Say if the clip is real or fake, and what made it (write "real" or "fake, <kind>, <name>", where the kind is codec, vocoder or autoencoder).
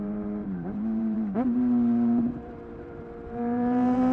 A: fake, vocoder, BigVGAN v2